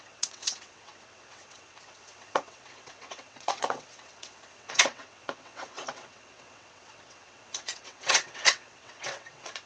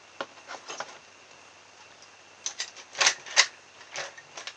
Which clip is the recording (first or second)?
second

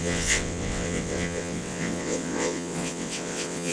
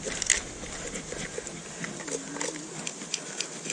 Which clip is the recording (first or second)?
second